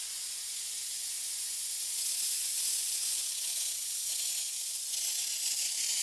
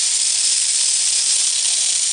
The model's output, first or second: first